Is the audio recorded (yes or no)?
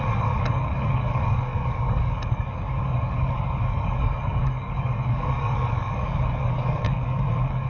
no